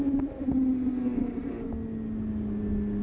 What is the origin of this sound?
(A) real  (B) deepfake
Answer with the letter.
A